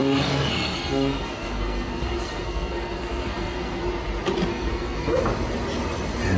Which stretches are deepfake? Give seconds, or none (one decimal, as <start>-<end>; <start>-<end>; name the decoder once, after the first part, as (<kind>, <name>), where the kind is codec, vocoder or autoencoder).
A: 0.0-3.8 (codec, SNAC); 4.5-5.2